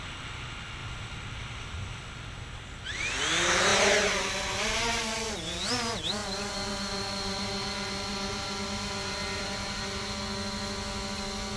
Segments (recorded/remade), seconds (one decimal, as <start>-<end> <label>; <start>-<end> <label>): 0.0-6.2 recorded; 6.2-10.2 remade; 10.2-11.6 recorded